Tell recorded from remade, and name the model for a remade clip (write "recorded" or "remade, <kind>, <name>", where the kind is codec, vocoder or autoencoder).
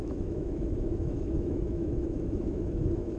remade, autoencoder, DAC-VAE